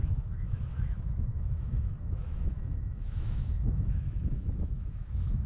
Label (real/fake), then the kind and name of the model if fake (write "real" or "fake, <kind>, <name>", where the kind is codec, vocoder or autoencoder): fake, autoencoder, DAC-VAE